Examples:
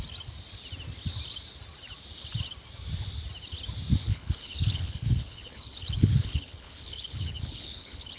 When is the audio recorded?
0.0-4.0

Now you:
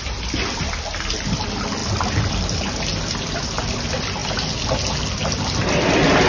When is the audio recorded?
0.0-6.3

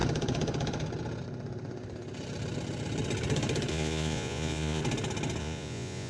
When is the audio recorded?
0.0-3.7; 4.8-5.4

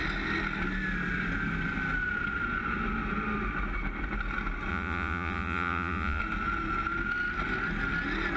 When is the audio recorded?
0.0-4.7; 6.2-8.4